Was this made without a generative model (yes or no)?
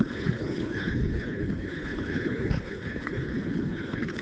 no